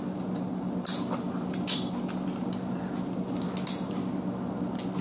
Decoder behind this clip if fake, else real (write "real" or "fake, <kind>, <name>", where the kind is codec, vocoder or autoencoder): real